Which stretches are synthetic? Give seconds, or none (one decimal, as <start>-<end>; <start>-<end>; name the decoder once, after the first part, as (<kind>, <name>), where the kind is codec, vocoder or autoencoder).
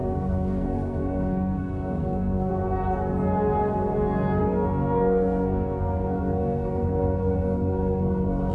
0.0-2.5 (codec, SNAC); 4.4-8.5